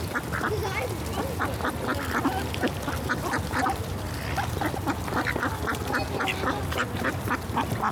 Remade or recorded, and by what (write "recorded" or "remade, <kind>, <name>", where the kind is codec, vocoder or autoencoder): recorded